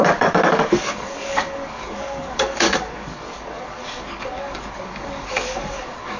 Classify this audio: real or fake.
fake